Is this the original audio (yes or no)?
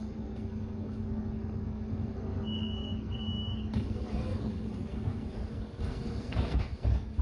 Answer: no